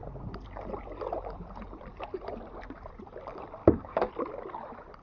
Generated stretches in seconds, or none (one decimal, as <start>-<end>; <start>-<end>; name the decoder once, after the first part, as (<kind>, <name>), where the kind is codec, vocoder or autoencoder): 3.6-4.1 (codec, DAC)